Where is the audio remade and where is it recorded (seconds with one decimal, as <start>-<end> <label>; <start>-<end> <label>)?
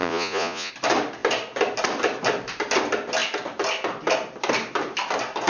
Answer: 0.0-0.7 remade; 0.7-5.5 recorded